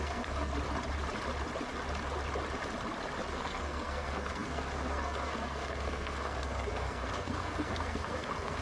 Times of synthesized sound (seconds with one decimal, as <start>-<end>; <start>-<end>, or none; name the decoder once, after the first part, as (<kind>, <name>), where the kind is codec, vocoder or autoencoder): 0.0-0.5 (codec, SNAC); 3.3-8.6